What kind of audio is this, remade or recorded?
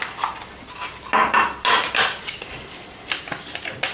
recorded